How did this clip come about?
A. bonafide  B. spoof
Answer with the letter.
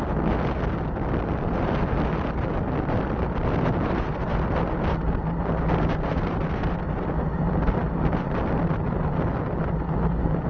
A